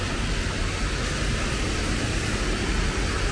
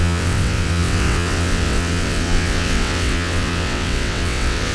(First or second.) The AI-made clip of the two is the second